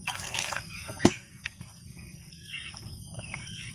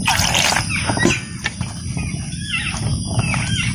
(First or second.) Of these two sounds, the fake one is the first